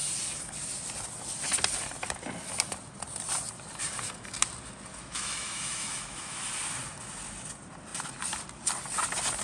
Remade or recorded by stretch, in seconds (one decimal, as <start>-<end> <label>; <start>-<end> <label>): 0.0-4.9 recorded; 4.9-6.5 remade; 6.5-9.4 recorded